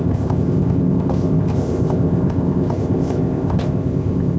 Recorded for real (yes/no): no